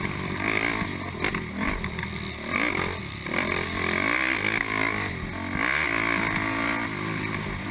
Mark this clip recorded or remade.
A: recorded